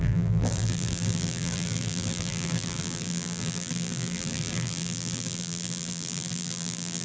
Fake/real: fake